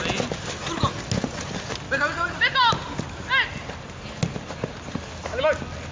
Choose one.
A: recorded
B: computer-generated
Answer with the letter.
A